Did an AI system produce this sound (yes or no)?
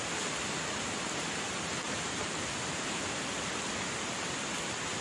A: no